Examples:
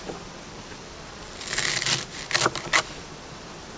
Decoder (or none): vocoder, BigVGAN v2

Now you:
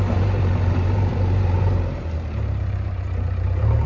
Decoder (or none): vocoder, BigVGAN v2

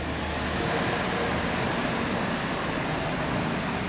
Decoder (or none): none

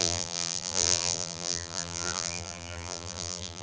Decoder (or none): vocoder, BigVGAN v2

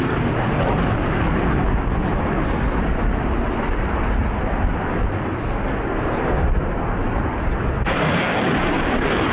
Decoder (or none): none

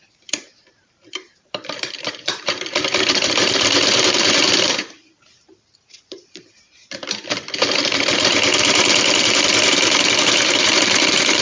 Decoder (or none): vocoder, BigVGAN v2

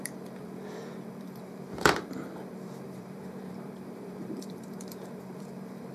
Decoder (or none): vocoder, BigVGAN v2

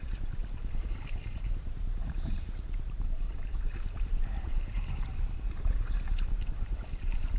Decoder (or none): vocoder, BigVGAN v2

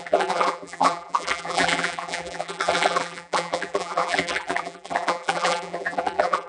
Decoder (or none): vocoder, BigVGAN v2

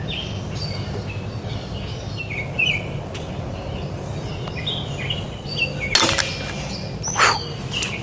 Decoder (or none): none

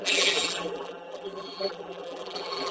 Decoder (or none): vocoder, BigVGAN v2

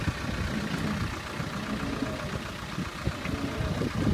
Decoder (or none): none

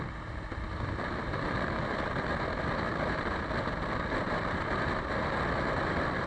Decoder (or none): vocoder, BigVGAN v2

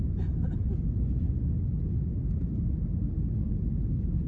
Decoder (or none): none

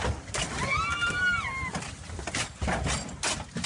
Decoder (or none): none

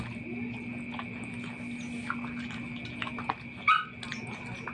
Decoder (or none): none